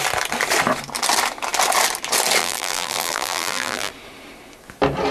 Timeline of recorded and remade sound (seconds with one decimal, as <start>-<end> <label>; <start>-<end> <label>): 0.0-2.4 recorded; 2.4-3.9 remade; 3.9-5.1 recorded